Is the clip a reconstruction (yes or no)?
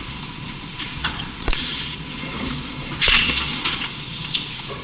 yes